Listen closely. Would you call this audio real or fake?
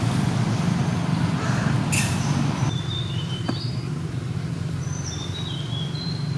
fake